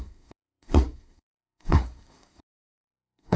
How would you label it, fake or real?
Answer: fake